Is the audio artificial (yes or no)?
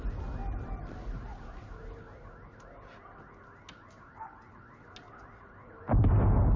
no